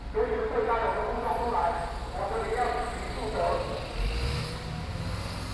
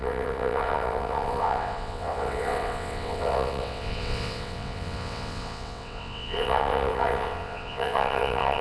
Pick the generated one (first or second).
second